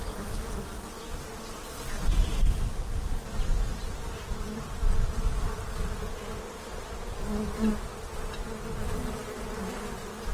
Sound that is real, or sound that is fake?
real